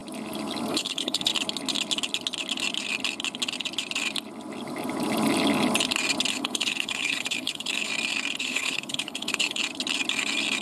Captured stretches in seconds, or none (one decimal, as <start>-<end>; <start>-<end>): 0.0-0.7; 1.3-6.3; 7.9-8.4; 9.6-10.6